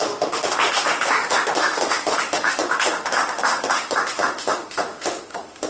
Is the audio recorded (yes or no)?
no